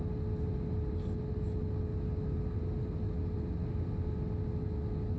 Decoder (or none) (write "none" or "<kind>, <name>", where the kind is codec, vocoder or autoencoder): none